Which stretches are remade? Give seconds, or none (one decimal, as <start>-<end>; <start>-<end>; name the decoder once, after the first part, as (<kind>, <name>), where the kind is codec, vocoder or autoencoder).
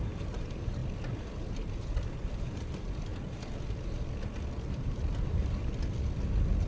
0.0-0.8 (vocoder, BigVGAN v2); 2.1-3.1; 4.7-5.6